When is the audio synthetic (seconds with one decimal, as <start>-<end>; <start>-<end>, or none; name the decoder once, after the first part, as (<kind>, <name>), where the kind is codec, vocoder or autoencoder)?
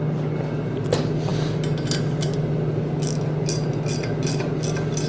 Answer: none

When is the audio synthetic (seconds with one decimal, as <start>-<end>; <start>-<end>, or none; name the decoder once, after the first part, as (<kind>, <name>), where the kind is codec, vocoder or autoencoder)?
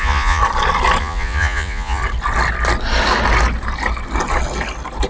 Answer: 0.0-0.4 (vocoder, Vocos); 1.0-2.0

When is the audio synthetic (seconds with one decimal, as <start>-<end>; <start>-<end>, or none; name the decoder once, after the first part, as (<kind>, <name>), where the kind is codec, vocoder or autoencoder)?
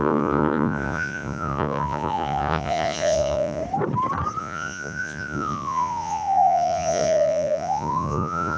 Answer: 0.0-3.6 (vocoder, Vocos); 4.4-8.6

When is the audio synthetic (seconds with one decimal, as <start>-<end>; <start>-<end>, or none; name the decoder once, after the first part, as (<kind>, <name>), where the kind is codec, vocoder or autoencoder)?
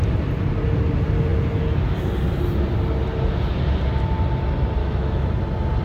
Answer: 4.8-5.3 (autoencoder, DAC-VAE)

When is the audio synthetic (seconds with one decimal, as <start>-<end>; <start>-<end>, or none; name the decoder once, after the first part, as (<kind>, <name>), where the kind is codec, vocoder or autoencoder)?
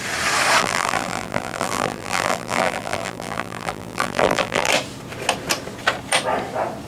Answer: 0.6-4.7 (vocoder, BigVGAN v2)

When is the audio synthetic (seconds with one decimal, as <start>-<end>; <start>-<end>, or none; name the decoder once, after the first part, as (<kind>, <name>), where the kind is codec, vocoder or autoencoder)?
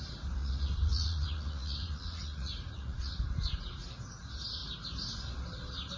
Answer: 0.4-3.2 (vocoder, Vocos)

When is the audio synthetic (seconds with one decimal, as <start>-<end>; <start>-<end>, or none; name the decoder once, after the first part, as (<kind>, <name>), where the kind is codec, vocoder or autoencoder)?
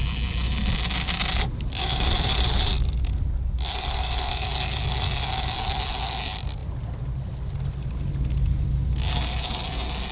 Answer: none